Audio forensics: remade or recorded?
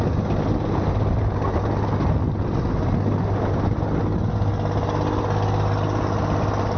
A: recorded